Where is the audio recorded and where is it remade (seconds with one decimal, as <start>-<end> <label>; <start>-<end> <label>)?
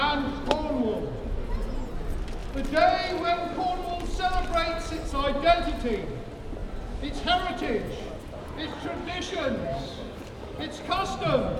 0.0-9.0 recorded; 9.0-10.6 remade; 10.6-11.6 recorded